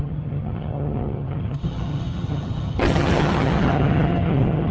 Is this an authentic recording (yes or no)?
no